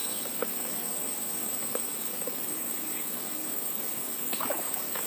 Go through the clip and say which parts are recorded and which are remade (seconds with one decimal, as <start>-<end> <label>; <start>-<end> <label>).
0.0-5.1 remade